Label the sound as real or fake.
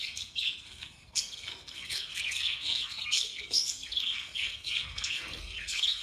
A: fake